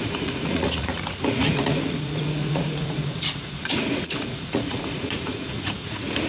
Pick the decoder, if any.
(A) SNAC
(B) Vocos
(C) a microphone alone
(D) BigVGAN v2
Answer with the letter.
B